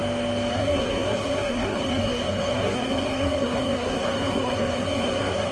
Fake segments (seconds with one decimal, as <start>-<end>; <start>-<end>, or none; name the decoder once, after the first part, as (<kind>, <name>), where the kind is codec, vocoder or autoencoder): 0.5-5.5 (codec, SNAC)